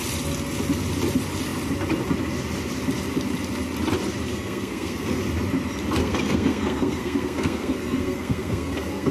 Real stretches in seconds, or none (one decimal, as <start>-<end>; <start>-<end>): 0.0-4.3; 5.2-6.0